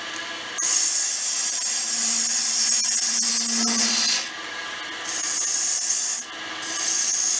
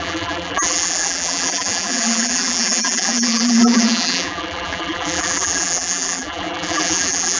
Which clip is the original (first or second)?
first